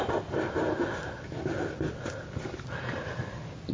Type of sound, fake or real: real